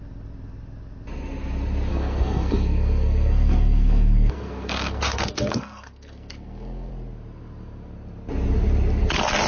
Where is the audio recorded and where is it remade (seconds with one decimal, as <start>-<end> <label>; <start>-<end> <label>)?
0.0-1.9 recorded; 1.9-6.9 remade; 6.9-9.5 recorded